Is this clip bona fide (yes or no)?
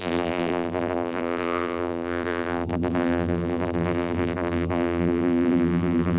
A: no